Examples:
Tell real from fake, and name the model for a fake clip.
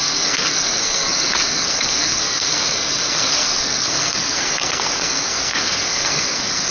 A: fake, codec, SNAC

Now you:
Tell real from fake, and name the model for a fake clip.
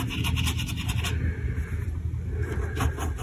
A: real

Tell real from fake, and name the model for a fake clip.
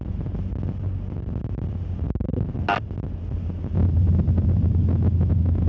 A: real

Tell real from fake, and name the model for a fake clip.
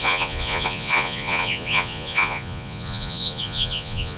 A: fake, vocoder, Vocos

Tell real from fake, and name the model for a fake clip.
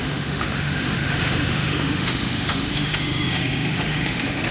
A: fake, autoencoder, DAC-VAE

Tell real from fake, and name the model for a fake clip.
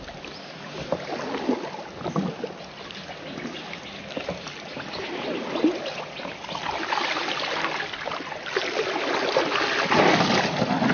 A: real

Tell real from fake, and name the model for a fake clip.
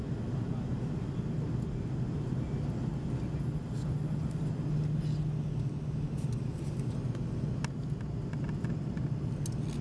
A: real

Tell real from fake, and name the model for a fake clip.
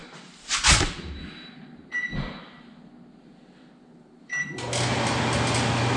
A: real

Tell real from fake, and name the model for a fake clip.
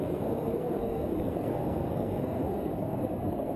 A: fake, codec, SNAC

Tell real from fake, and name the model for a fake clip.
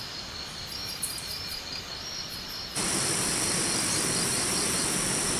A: real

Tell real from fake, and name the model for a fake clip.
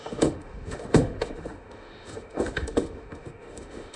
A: fake, autoencoder, DAC-VAE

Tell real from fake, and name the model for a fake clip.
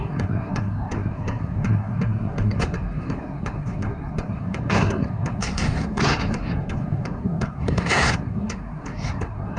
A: fake, codec, SNAC